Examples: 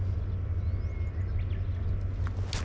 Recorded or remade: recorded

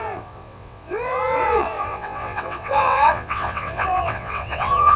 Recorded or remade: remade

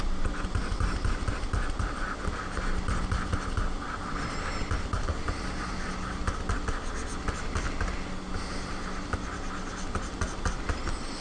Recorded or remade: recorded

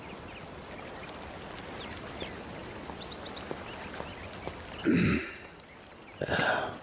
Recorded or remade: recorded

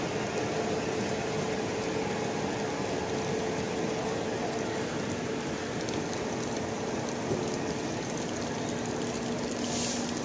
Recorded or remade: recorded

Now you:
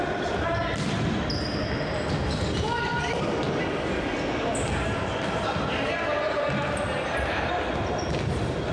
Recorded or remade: recorded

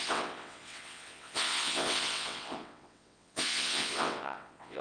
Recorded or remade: remade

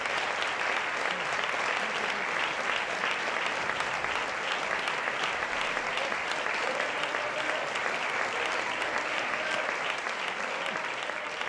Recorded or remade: recorded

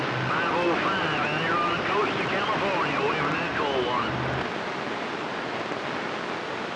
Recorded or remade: recorded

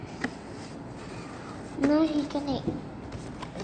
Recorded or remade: recorded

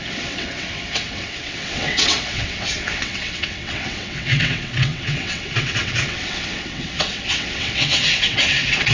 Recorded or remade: remade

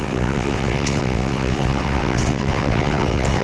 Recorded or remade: remade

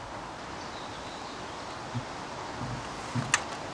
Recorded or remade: recorded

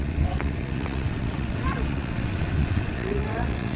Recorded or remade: remade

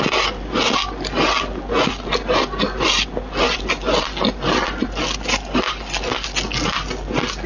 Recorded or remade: recorded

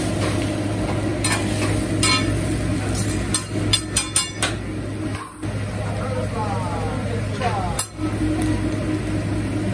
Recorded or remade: recorded